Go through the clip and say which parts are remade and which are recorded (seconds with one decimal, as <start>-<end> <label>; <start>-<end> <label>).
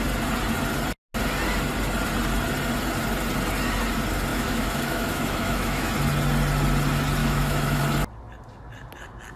0.0-4.3 recorded; 4.3-5.9 remade; 5.9-7.2 recorded; 7.2-7.8 remade; 7.8-9.4 recorded